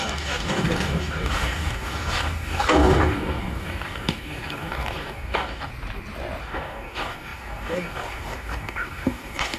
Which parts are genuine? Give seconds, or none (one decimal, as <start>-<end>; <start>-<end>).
5.7-6.4